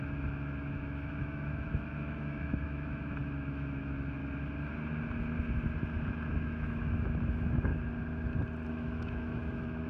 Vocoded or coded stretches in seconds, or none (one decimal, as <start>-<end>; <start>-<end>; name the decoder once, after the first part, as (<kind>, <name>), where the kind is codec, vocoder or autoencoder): 0.0-4.2 (autoencoder, DAC-VAE); 6.3-7.7; 8.7-9.9